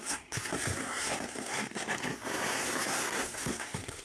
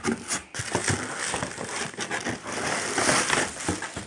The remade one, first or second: first